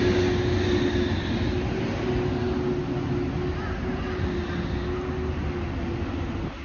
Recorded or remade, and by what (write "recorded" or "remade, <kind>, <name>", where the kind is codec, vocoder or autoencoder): recorded